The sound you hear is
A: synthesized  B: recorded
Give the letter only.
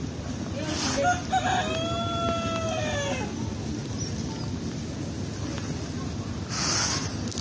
B